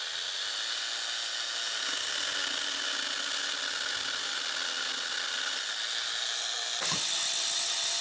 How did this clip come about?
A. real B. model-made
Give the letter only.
A